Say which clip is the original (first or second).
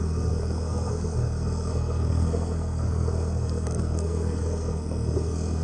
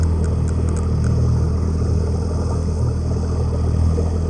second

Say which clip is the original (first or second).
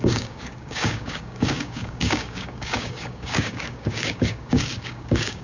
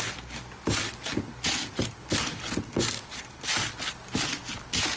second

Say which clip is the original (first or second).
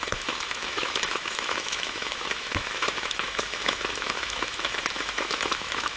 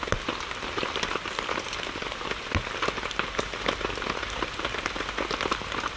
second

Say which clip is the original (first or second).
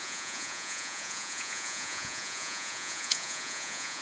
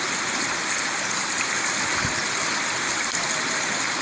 second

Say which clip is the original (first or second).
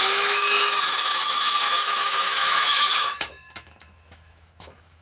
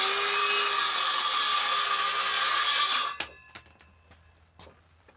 second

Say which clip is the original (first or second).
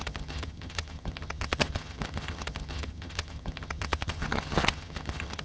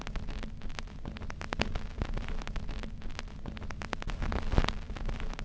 second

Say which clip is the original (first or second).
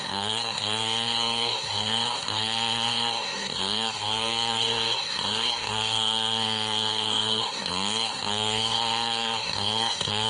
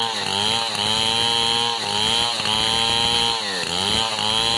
second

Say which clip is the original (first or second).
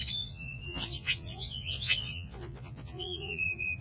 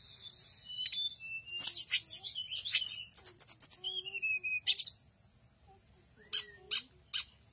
second